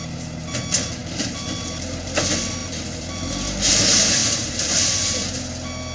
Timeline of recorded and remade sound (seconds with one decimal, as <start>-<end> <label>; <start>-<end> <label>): 0.0-1.0 recorded; 1.0-2.2 remade; 2.2-2.6 recorded; 2.6-3.3 remade; 3.3-4.2 recorded; 4.2-5.3 remade; 5.3-5.9 recorded